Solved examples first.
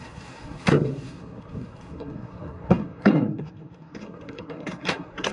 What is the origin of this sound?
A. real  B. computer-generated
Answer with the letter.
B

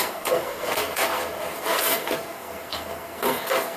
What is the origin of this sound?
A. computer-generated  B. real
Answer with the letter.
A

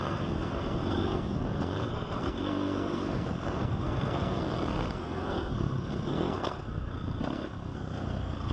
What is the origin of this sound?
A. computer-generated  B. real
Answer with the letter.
A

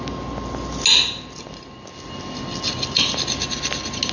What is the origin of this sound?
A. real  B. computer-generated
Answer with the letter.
A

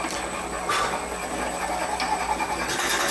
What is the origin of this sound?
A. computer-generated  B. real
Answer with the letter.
B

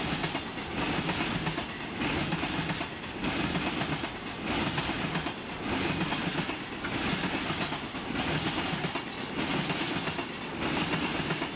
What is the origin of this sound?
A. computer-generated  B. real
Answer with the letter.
B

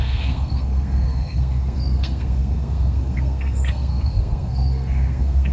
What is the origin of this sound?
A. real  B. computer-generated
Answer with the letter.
B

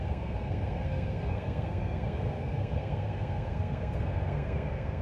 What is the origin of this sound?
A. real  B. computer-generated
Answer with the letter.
B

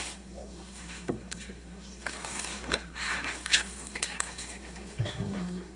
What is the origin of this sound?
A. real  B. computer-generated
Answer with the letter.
B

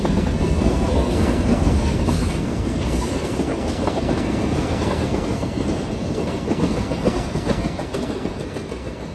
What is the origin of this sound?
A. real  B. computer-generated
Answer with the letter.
B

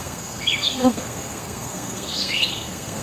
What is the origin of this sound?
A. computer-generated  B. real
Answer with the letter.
A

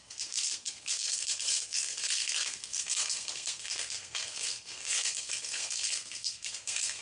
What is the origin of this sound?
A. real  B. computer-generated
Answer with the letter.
B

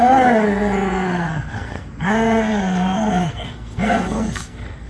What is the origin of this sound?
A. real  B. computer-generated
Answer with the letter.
B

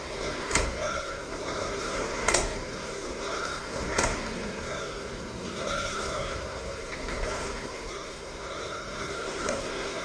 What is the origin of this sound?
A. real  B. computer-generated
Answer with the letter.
B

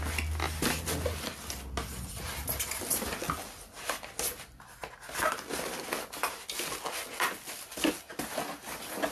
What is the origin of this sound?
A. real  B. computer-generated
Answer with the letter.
A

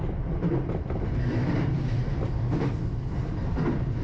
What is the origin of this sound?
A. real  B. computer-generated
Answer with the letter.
A